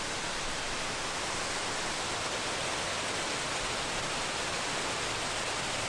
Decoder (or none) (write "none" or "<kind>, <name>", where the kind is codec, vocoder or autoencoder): none